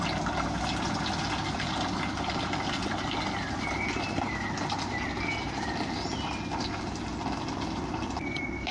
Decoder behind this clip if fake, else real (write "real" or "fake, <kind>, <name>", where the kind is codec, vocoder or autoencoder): real